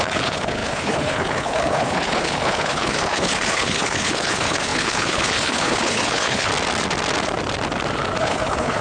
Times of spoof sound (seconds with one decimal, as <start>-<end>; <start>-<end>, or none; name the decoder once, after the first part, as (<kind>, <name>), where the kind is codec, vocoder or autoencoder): 0.0-6.5 (codec, HILCodec); 8.2-8.8